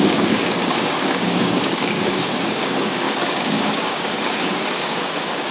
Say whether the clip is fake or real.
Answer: fake